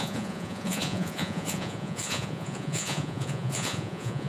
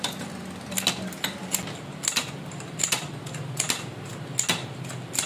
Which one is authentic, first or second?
second